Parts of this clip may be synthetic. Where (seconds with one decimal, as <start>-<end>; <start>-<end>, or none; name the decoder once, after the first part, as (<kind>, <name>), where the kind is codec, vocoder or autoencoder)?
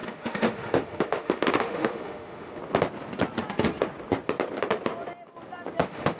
0.0-2.6 (autoencoder, DAC-VAE); 5.8-6.2